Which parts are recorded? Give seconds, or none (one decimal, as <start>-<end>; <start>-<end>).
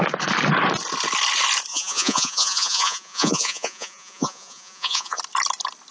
0.0-1.7; 5.2-5.9